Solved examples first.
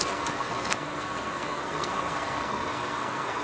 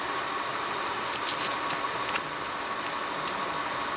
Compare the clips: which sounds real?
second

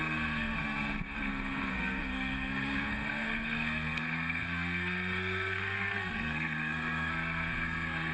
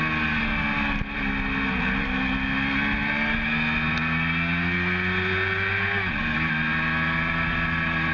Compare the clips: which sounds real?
second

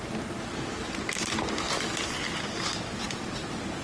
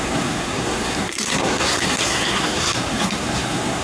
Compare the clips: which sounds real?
first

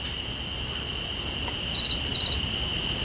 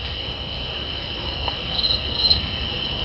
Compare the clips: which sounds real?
first